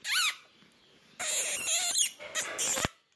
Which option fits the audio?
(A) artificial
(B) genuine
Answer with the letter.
B